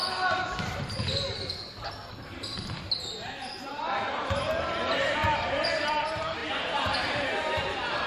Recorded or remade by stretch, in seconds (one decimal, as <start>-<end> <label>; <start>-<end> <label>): 0.0-2.9 recorded; 2.9-8.1 remade